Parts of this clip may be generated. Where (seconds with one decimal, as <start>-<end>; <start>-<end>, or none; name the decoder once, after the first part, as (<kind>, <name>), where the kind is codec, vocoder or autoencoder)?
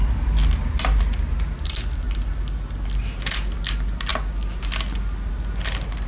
none